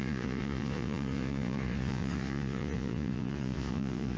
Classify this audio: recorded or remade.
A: remade